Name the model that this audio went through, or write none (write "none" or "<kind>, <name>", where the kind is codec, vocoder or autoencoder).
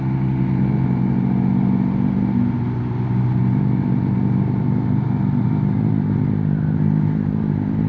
none